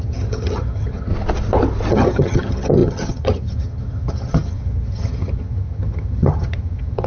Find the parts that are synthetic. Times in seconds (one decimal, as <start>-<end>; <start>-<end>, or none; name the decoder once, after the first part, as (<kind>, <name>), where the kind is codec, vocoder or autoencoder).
0.0-1.1 (vocoder, HiFi-GAN); 1.9-7.1